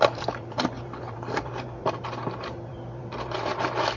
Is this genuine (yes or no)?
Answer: no